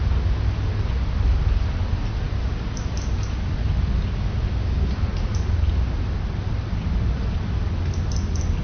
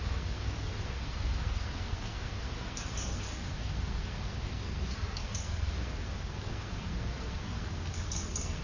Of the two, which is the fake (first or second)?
second